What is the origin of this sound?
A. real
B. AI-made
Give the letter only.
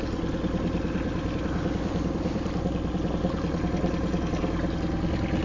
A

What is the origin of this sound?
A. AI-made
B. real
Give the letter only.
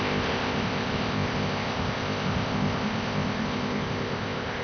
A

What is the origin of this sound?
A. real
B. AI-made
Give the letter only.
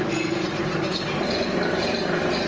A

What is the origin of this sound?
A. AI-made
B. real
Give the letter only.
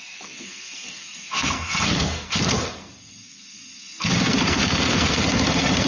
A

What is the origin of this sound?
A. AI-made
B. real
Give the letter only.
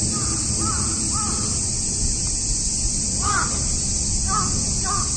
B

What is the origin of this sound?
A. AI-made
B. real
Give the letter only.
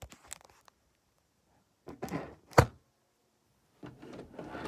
B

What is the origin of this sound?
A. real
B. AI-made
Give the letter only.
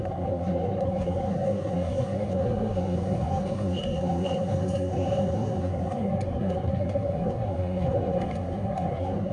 B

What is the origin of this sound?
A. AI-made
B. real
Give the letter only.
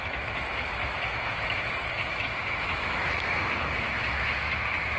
A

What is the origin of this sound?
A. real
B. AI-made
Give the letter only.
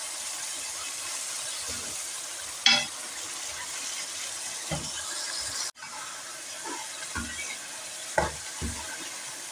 A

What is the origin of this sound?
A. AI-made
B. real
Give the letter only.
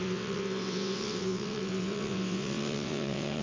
A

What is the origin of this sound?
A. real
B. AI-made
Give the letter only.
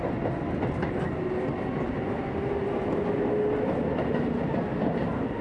A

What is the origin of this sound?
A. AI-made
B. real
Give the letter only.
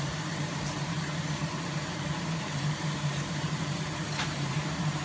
A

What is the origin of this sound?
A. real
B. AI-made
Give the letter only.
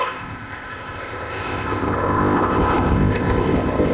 B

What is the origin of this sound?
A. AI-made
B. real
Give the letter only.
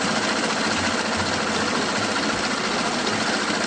B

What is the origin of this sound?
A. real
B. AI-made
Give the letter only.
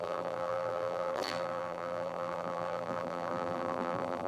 B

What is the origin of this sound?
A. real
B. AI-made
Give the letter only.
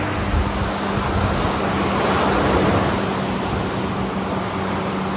A